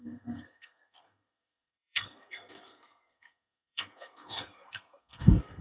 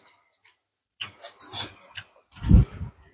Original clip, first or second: second